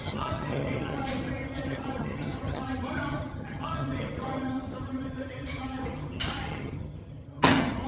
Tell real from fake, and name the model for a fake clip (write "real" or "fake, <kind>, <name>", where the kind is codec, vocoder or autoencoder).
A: fake, vocoder, HiFi-GAN